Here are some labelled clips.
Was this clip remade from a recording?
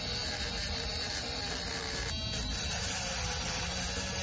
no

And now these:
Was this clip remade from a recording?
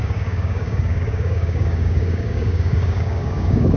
yes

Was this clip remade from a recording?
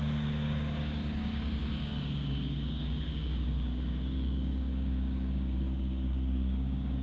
yes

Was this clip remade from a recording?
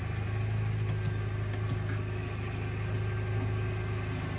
no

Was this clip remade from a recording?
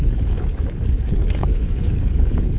yes